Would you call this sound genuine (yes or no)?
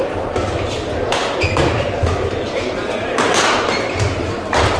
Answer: no